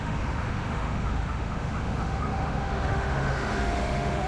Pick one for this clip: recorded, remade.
remade